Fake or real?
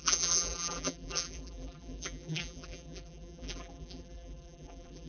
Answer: fake